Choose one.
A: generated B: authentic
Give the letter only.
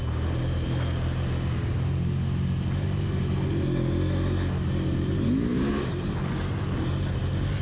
B